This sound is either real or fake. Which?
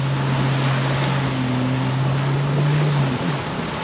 real